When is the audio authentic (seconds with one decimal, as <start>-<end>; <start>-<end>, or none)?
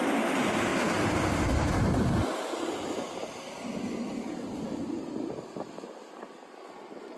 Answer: 0.0-7.2